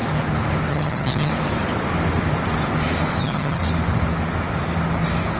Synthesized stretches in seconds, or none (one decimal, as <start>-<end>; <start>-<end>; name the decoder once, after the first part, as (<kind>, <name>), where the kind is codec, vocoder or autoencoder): 0.7-1.3 (vocoder, HiFi-GAN); 3.2-3.6